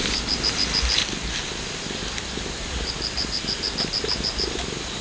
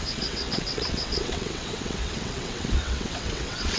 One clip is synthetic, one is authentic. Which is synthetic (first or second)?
second